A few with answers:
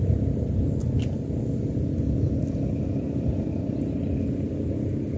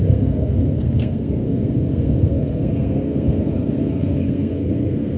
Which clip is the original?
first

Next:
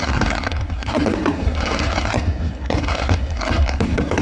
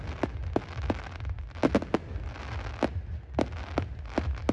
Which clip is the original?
second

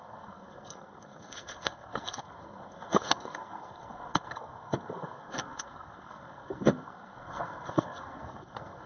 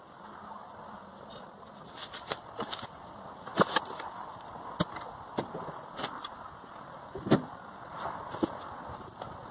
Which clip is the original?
second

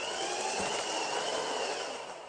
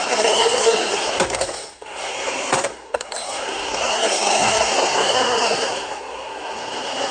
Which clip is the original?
first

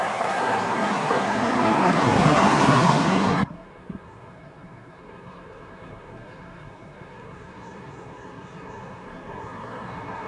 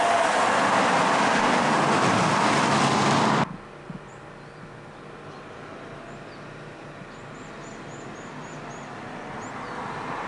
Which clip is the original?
second